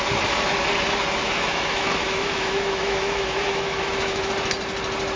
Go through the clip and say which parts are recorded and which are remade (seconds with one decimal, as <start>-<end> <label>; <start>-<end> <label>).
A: 0.0-1.2 recorded; 1.2-4.3 remade; 4.3-5.2 recorded